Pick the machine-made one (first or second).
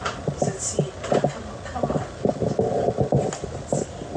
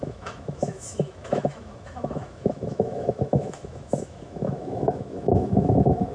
second